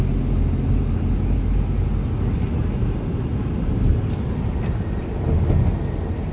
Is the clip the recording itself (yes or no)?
yes